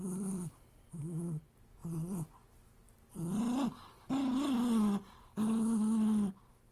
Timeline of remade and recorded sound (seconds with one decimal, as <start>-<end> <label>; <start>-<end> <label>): 0.0-6.7 recorded